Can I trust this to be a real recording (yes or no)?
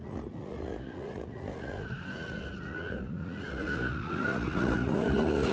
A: no